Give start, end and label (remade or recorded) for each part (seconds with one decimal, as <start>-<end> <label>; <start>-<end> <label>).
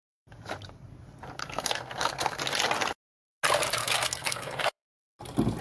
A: 0.0-1.4 recorded; 1.4-2.4 remade; 2.4-3.8 recorded; 3.8-4.9 remade; 4.9-5.6 recorded